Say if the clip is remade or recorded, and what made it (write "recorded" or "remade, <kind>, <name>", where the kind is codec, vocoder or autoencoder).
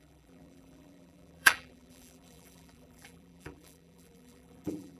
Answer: remade, vocoder, BigVGAN v2